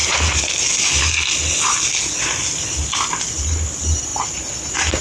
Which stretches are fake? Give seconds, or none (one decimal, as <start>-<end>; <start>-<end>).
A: none